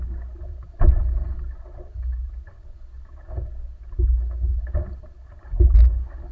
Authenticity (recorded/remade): recorded